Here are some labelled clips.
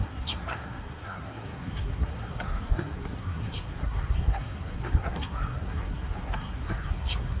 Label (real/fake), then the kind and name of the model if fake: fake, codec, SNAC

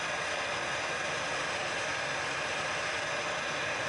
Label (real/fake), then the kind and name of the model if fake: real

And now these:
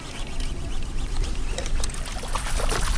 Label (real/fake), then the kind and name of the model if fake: real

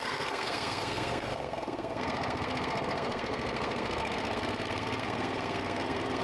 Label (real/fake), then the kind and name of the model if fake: fake, codec, SNAC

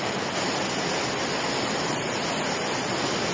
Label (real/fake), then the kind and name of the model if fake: real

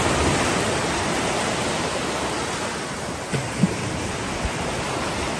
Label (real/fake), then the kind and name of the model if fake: real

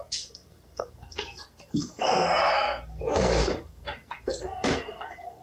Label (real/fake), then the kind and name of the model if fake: fake, codec, SNAC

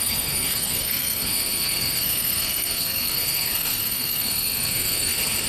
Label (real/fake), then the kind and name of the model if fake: fake, codec, SNAC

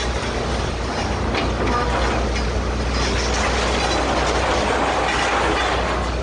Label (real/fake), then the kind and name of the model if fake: real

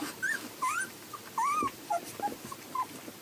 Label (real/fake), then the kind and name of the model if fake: real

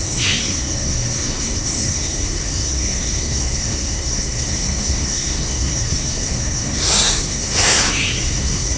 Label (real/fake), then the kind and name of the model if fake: fake, codec, SNAC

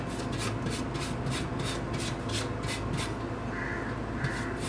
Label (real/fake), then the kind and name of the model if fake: real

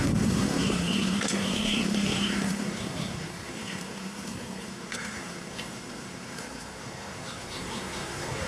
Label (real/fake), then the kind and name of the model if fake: fake, codec, SNAC